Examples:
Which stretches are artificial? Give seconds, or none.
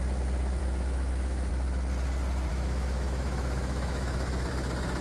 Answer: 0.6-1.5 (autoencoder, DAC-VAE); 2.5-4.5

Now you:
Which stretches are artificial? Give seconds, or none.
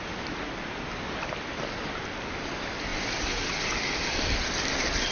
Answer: none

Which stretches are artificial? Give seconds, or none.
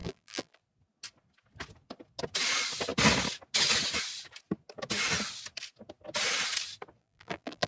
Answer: 0.0-0.6 (vocoder, BigVGAN v2); 7.0-7.7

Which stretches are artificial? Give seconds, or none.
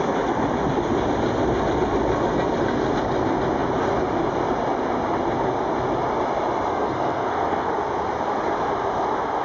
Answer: 6.7-7.7 (codec, SNAC)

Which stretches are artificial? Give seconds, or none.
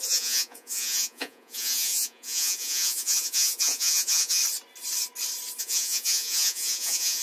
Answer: 0.0-4.4 (vocoder, Vocos); 5.6-7.2